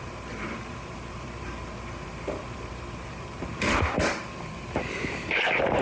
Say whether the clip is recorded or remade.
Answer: remade